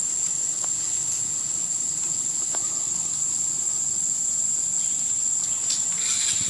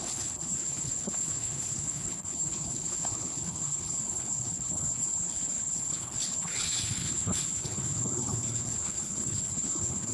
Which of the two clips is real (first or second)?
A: first